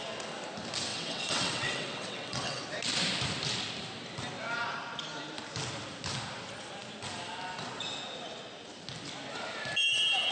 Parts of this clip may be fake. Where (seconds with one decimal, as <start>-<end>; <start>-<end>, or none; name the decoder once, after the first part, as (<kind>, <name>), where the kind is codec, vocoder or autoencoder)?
0.9-2.6 (vocoder, WaveNeXt)